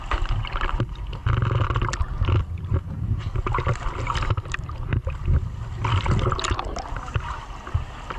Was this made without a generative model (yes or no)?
yes